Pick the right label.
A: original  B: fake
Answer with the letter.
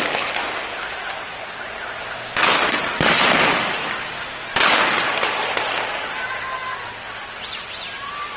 A